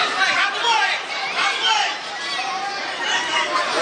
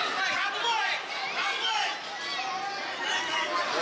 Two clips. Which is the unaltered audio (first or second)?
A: second